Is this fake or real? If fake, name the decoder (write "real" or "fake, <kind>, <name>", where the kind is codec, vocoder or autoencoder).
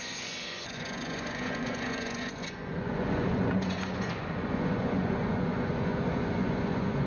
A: fake, vocoder, Vocos